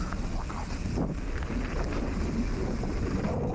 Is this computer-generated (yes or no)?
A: no